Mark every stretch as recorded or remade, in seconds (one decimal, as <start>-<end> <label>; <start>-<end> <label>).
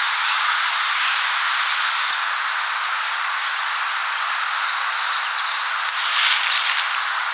0.0-7.3 recorded